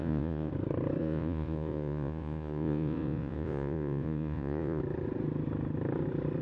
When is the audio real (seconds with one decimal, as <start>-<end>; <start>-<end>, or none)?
0.5-1.0; 4.8-6.4